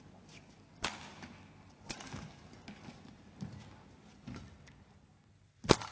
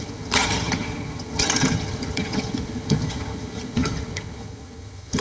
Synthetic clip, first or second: second